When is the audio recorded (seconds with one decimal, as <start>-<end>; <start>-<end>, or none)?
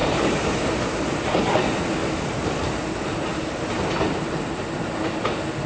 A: 0.6-2.0; 2.6-3.3; 4.9-5.7